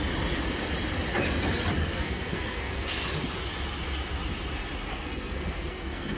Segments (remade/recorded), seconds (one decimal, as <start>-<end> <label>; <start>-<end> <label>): 0.0-1.8 recorded; 1.8-3.0 remade; 3.0-4.9 recorded; 4.9-6.2 remade